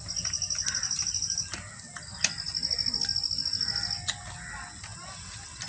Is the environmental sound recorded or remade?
recorded